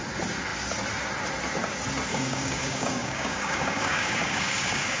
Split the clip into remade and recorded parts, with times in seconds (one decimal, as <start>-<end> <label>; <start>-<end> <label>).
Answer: 0.0-2.1 recorded; 2.1-5.0 remade